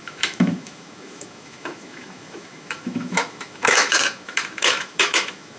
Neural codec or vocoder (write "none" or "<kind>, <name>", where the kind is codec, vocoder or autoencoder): autoencoder, DAC-VAE